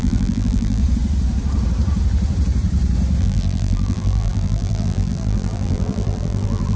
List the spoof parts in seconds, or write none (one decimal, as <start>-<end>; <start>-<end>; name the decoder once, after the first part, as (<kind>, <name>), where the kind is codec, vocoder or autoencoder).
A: 0.0-0.8 (vocoder, BigVGAN v2); 3.2-6.8